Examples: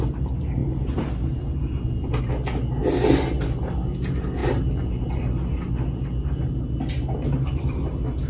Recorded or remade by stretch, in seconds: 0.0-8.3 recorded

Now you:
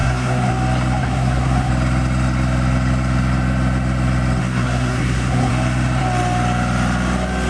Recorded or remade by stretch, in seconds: 0.0-0.5 remade; 0.5-1.0 recorded; 1.0-1.7 remade; 1.7-4.4 recorded; 4.4-5.5 remade; 5.5-7.5 recorded

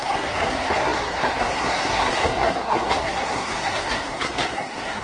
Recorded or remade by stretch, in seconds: 0.0-5.0 remade

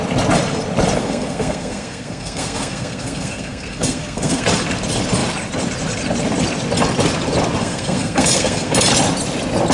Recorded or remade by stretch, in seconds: 0.0-1.0 recorded; 1.0-4.4 remade; 4.4-7.6 recorded; 7.6-8.7 remade; 8.7-9.7 recorded